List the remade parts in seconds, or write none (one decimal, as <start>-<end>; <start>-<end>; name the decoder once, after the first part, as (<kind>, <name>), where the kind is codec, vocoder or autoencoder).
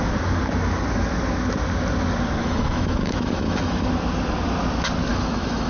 2.4-3.9 (autoencoder, DAC-VAE); 5.1-5.7